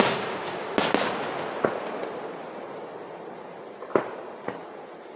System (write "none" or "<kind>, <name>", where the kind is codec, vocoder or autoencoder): none